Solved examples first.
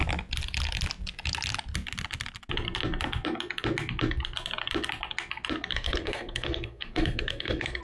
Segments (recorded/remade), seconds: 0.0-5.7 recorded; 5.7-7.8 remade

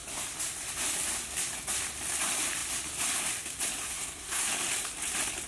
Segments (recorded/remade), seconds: 0.0-3.9 recorded; 3.9-4.5 remade; 4.5-5.5 recorded

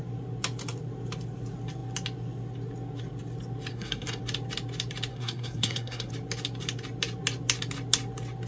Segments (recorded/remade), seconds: 0.0-3.7 recorded; 3.7-4.2 remade; 4.2-5.1 recorded; 5.1-6.1 remade; 6.1-8.5 recorded

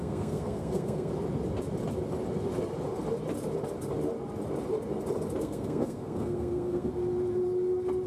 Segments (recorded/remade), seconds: 0.0-1.1 remade; 1.1-5.4 recorded; 5.4-6.9 remade; 6.9-8.1 recorded

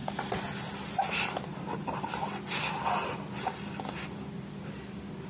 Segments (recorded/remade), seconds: 0.0-5.3 recorded

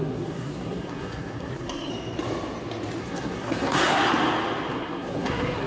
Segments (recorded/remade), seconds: 0.0-1.9 remade; 1.9-3.0 recorded; 3.0-4.0 remade; 4.0-4.7 recorded; 4.7-5.7 remade

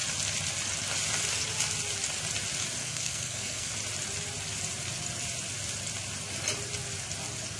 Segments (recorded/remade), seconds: 0.0-2.8 recorded; 2.8-3.7 remade; 3.7-7.6 recorded